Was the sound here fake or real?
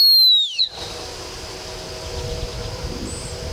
real